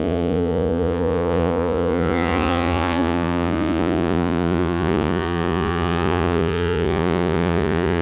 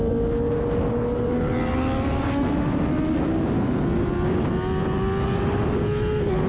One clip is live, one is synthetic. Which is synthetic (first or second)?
first